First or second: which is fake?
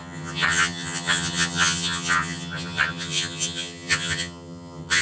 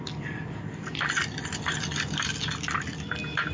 first